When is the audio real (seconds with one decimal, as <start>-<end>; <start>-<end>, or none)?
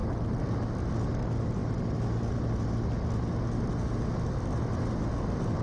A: 0.0-5.6